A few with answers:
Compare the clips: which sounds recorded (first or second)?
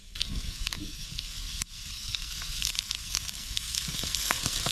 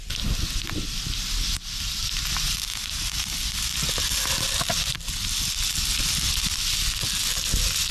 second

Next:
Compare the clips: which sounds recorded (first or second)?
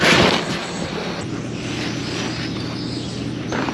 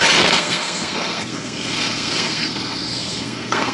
first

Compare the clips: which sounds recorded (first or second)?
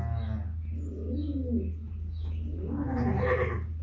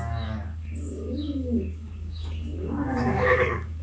first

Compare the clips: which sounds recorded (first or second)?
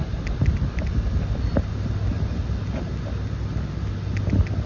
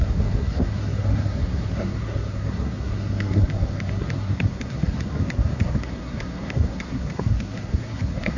first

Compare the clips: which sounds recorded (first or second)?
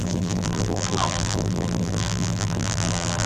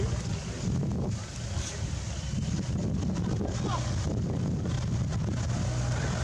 second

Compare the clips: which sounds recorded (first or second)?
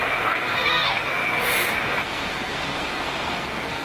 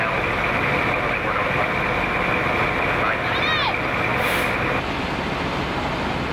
second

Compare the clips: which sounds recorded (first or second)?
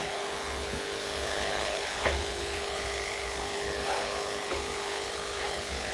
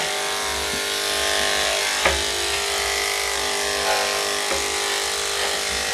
second